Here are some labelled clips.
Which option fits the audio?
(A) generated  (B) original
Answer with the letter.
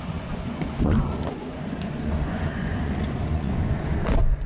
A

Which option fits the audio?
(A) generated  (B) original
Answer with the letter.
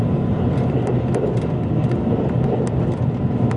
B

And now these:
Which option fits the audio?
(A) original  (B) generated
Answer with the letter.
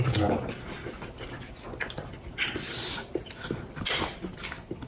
A